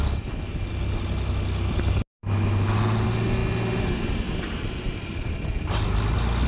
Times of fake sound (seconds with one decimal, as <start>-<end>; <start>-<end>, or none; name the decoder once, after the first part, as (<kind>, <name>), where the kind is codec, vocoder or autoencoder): none